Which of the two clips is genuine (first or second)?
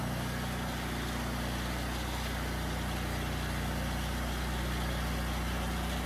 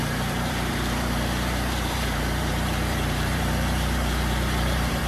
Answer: first